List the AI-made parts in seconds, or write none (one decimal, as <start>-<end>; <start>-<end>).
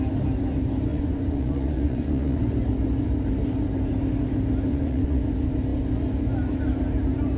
0.9-2.4; 4.7-5.2